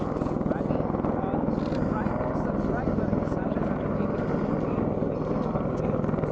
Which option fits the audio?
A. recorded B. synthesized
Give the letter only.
A